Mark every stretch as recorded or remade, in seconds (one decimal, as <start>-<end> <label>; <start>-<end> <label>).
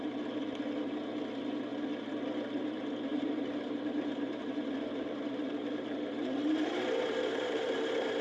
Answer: 0.0-3.1 recorded; 3.1-8.2 remade